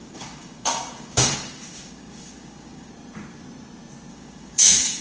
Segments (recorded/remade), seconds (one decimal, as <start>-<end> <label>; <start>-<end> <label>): 0.0-2.9 remade; 2.9-4.1 recorded; 4.1-5.0 remade